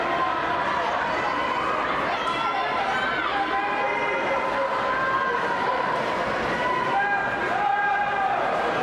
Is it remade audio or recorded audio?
recorded